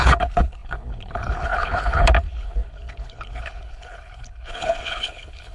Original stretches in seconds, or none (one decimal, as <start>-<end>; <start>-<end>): none